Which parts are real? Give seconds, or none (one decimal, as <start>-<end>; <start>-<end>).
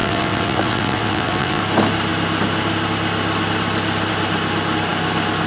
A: 1.6-5.5